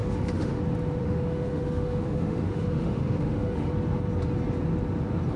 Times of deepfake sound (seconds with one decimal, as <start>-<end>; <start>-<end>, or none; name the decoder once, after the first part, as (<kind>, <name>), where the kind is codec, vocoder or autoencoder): 0.0-0.6 (autoencoder, DAC-VAE); 1.0-3.7